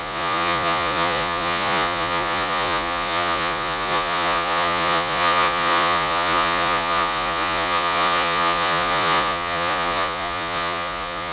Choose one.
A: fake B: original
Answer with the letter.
A